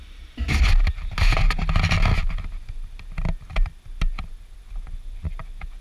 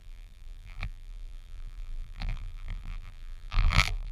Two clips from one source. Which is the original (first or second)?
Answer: first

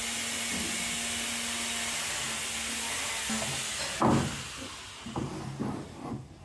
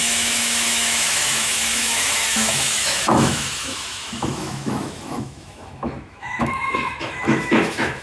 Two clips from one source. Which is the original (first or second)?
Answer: first